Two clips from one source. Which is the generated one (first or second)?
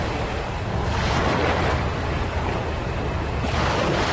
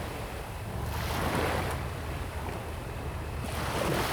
first